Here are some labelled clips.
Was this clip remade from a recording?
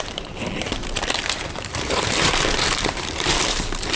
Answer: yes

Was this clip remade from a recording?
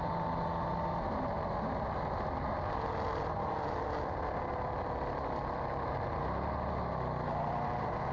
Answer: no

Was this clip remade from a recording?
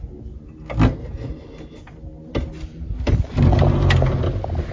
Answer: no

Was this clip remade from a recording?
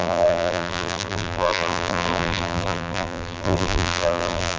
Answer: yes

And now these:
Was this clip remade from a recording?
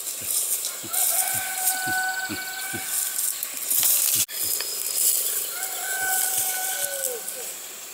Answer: no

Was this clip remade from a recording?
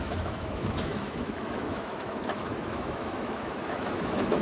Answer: yes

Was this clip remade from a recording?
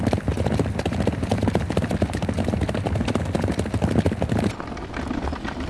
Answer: no